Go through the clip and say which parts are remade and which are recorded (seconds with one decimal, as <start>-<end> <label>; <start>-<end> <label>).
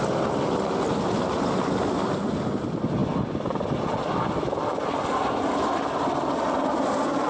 0.0-7.3 recorded